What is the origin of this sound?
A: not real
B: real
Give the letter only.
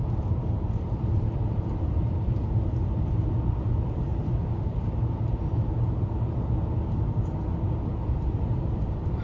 A